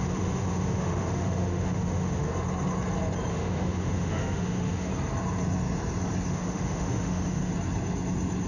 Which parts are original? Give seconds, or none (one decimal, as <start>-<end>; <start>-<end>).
2.3-3.3; 4.9-6.3; 7.5-8.5